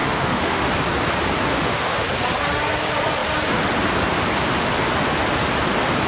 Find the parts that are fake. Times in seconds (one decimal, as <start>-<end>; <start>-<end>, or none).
0.0-0.7; 1.5-2.1